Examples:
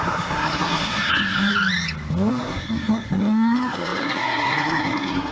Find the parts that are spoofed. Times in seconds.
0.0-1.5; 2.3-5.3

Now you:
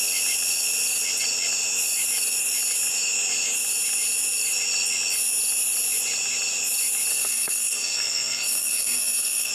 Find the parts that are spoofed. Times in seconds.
7.1-9.5